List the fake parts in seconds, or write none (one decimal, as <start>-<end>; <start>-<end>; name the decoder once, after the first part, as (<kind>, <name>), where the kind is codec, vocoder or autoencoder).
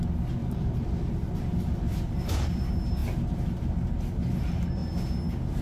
0.4-2.0 (vocoder, BigVGAN v2)